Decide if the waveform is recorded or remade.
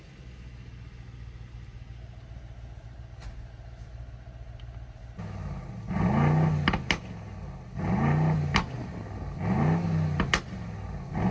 recorded